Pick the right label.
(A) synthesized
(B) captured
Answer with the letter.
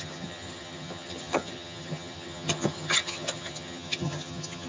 A